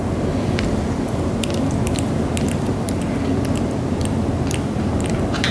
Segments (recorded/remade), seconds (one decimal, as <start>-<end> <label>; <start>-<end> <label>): 0.0-2.7 recorded; 2.7-5.5 remade